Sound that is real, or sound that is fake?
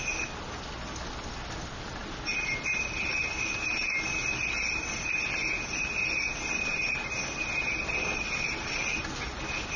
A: real